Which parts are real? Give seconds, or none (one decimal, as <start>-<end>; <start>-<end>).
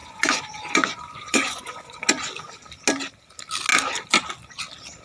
2.3-5.0